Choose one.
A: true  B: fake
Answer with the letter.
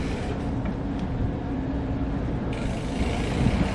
A